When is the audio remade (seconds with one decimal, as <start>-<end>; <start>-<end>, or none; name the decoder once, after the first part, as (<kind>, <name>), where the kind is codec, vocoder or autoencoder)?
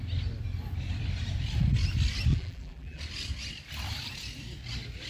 2.3-3.0 (vocoder, BigVGAN v2)